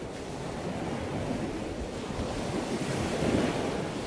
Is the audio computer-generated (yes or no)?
no